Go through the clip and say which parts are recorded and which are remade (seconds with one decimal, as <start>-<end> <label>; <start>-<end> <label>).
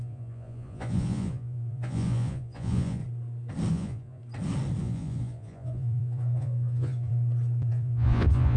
0.0-3.0 remade; 3.0-3.7 recorded; 3.7-4.2 remade; 4.2-4.8 recorded; 4.8-7.1 remade; 7.1-7.7 recorded; 7.7-8.6 remade